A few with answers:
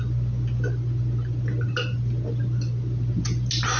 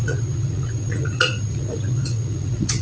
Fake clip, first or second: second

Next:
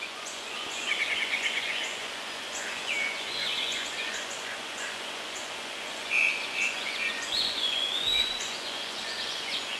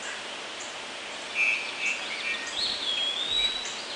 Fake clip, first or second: first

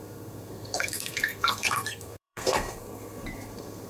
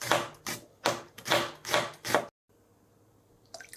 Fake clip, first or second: first